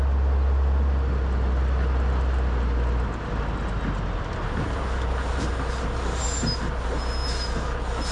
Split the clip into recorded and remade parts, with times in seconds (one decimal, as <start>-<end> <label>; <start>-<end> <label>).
0.0-8.1 recorded